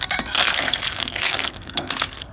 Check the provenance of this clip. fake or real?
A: fake